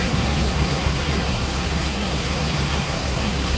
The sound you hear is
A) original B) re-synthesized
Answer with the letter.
B